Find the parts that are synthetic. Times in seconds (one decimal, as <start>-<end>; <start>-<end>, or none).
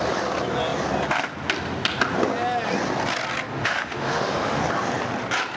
3.5-4.6